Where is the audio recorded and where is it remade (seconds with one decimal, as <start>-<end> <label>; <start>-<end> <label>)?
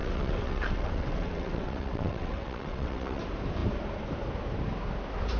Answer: 0.0-3.2 remade; 3.2-5.4 recorded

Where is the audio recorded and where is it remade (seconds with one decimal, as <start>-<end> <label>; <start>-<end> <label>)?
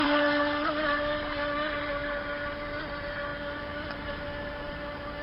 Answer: 0.0-3.3 remade; 3.3-4.1 recorded; 4.1-5.2 remade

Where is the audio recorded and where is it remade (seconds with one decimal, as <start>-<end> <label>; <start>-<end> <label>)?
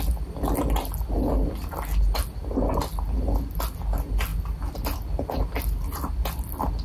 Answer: 0.0-6.8 recorded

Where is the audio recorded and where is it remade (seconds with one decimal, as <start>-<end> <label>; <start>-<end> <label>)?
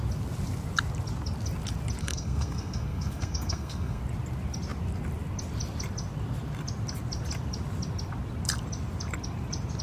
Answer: 0.0-2.0 recorded; 2.0-4.0 remade; 4.0-9.8 recorded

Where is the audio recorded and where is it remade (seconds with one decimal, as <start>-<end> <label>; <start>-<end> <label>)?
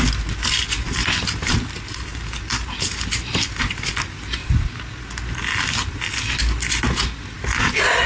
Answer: 0.0-8.1 recorded